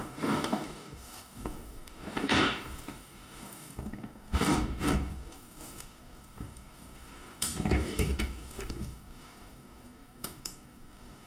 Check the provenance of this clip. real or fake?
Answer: fake